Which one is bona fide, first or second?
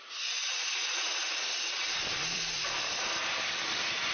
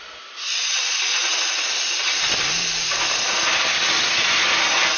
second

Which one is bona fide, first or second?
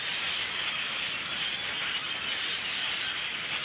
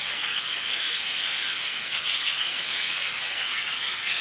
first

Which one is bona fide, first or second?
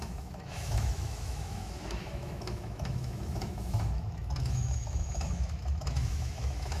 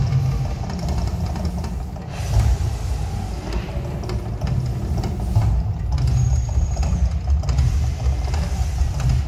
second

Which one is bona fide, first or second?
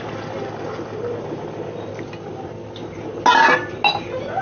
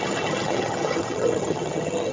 first